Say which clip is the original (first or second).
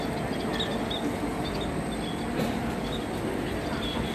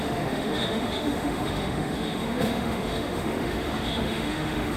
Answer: first